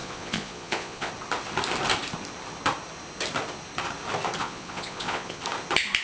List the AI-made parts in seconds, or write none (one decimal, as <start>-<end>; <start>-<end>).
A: 0.0-1.1; 4.4-5.4